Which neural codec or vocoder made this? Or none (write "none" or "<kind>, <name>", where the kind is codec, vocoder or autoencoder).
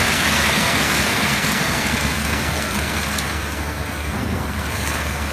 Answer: codec, SNAC